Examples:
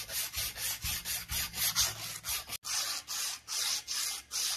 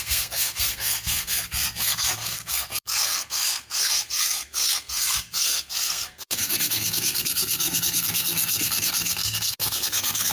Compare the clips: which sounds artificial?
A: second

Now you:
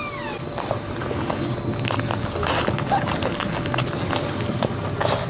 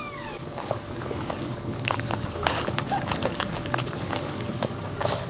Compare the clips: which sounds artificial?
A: second